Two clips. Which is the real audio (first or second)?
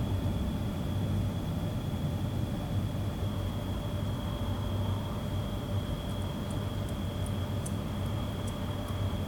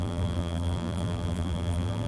first